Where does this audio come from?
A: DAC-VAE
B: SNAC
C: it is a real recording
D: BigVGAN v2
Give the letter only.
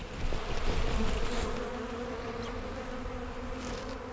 C